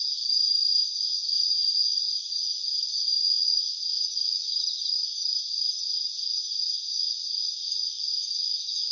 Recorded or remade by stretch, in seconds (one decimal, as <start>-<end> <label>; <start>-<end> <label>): 0.0-0.7 recorded; 0.7-1.8 remade; 1.8-3.1 recorded; 3.1-8.1 remade; 8.1-8.9 recorded

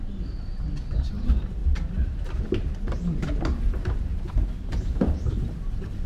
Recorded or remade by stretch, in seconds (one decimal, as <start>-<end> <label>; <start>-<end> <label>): 0.0-0.5 remade; 0.5-1.1 recorded; 1.1-1.6 remade; 1.6-4.6 recorded; 4.6-6.1 remade

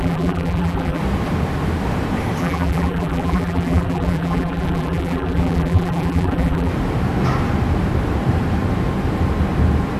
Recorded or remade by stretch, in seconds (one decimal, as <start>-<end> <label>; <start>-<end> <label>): 0.0-1.0 remade; 1.0-2.4 recorded; 2.4-6.7 remade; 6.7-10.0 recorded

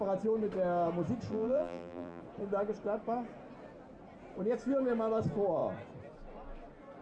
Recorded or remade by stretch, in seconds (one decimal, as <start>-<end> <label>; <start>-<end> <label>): 0.0-1.3 recorded; 1.3-2.2 remade; 2.2-7.0 recorded